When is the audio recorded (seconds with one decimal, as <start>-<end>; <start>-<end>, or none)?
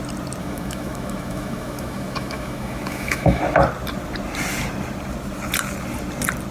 0.0-0.4; 3.4-6.5